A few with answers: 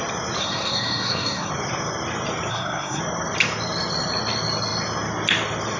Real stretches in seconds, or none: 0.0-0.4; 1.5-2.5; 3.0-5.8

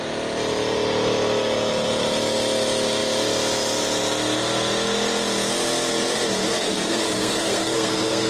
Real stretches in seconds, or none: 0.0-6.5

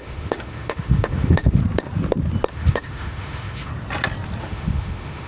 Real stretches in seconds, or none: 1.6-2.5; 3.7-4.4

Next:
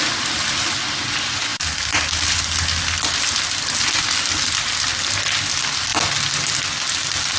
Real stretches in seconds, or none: 0.0-7.4

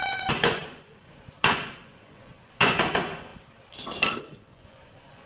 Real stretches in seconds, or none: 3.3-4.2

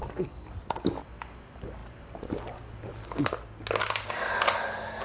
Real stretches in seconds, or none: 0.0-5.0

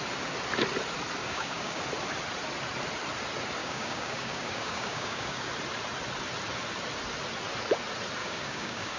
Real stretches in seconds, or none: 0.0-1.2; 1.8-3.6; 5.5-8.2